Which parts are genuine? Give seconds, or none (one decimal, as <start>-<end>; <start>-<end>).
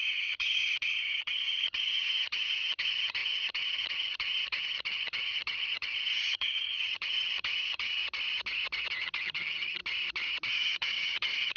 8.0-8.9; 9.8-10.5